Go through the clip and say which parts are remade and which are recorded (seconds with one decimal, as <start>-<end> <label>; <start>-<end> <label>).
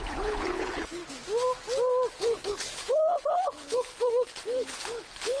0.0-1.0 remade; 1.0-2.1 recorded; 2.1-5.4 remade